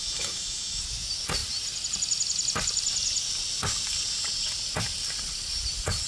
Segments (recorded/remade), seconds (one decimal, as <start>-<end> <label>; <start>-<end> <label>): 0.0-0.8 remade; 0.8-6.1 recorded